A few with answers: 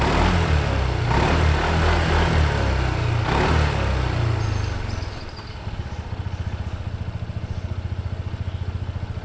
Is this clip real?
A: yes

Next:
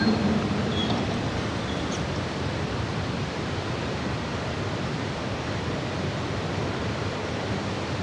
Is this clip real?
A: no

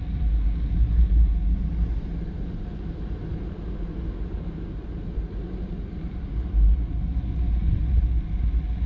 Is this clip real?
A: yes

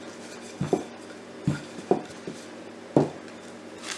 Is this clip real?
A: yes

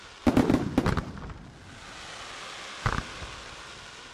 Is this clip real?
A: yes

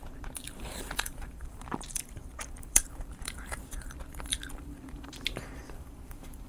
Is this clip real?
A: no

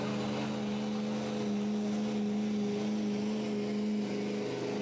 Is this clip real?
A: yes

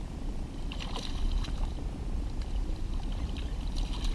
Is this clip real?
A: no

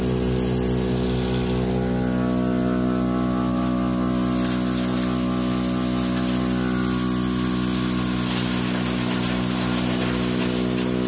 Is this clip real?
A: yes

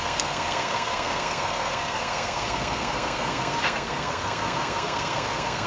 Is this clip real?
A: no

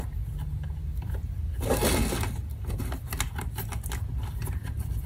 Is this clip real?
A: yes